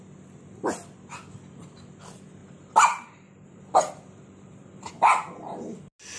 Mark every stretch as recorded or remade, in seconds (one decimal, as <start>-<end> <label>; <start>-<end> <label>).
0.0-2.4 recorded; 2.4-4.9 remade; 4.9-6.2 recorded